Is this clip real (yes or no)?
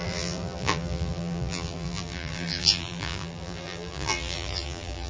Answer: no